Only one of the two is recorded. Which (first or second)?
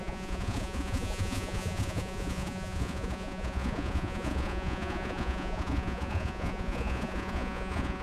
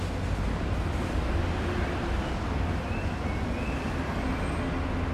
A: second